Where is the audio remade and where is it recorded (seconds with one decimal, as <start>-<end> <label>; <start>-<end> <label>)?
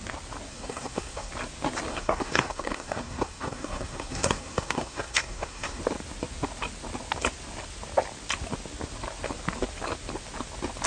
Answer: 0.0-0.5 recorded; 0.5-1.3 remade; 1.3-1.9 recorded; 1.9-5.8 remade; 5.8-10.9 recorded